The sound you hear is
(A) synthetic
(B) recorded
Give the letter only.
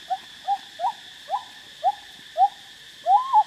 B